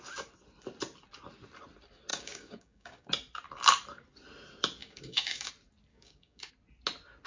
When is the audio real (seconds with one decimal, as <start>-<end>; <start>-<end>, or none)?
0.0-2.1; 3.1-4.8; 5.5-5.9; 6.5-7.3